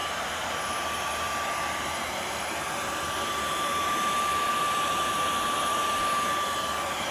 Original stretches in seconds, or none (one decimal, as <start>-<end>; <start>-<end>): none